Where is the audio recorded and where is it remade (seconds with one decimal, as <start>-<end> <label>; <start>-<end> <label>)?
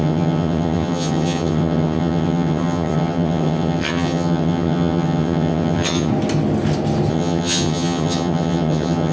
0.0-6.1 remade; 6.1-7.1 recorded; 7.1-9.1 remade